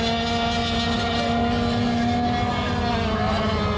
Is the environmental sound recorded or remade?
recorded